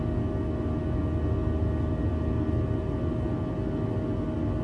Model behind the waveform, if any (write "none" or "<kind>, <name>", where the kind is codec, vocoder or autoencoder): none